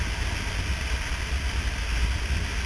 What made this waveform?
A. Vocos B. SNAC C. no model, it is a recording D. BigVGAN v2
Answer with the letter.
C